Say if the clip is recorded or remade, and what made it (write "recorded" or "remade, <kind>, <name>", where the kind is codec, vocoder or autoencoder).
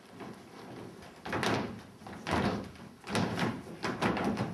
recorded